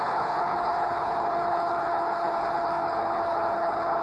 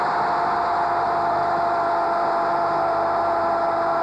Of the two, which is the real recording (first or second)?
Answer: second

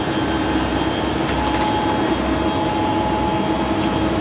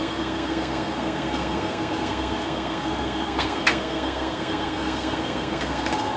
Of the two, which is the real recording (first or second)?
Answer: first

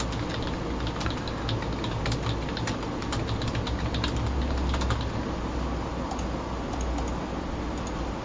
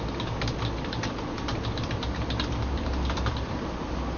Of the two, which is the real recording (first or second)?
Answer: first